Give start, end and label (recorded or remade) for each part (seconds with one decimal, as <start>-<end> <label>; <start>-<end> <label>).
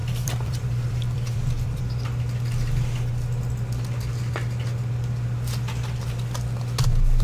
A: 0.0-1.8 remade; 1.8-7.2 recorded